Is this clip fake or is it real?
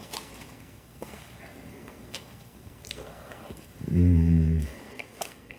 fake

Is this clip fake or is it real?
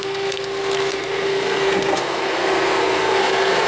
fake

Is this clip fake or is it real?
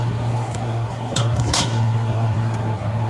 fake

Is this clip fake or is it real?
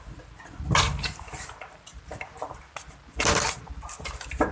real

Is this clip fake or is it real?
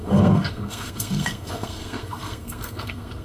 fake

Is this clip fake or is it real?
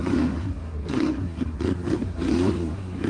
fake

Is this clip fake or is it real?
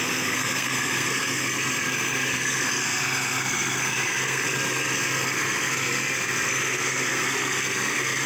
fake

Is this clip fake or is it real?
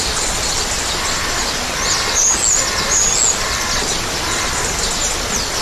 real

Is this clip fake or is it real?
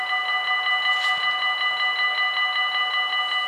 real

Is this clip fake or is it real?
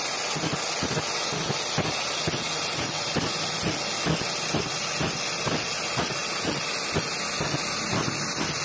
real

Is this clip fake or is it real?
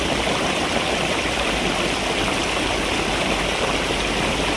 real